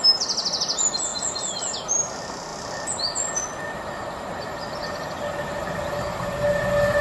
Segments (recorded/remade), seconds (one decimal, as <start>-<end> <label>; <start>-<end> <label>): 0.0-7.0 recorded